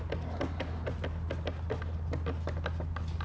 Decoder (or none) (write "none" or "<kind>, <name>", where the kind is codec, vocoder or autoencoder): none